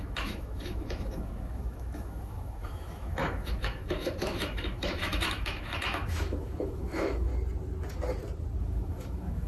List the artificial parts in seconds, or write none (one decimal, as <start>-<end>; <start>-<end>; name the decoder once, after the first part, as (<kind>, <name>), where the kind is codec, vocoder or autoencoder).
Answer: 0.0-7.3 (autoencoder, DAC-VAE); 8.6-9.5